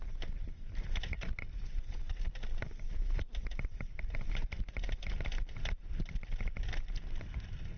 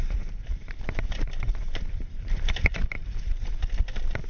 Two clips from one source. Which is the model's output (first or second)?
second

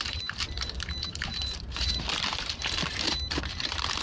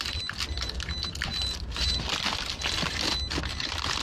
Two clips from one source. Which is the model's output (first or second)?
first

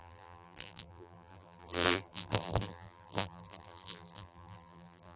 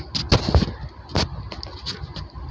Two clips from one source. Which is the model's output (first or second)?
first